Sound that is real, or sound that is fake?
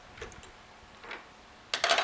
real